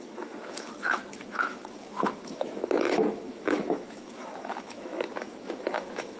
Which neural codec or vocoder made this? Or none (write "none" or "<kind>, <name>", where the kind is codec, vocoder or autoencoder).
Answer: autoencoder, DAC-VAE